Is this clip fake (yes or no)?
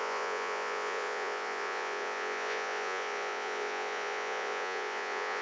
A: yes